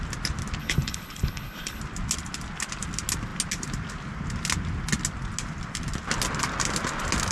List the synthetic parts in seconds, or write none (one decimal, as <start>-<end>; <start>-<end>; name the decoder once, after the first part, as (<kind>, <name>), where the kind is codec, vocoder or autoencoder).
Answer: 0.6-1.8 (codec, HILCodec)